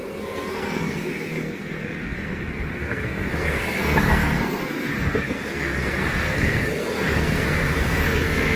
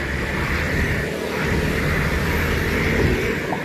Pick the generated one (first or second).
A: first